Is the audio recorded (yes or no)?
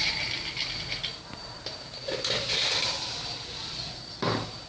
yes